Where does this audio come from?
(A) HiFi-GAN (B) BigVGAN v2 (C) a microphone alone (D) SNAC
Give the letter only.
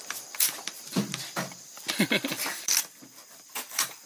B